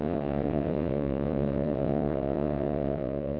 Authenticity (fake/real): fake